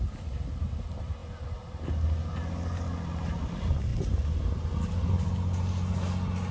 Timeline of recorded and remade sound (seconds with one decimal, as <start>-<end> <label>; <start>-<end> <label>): 0.0-6.5 recorded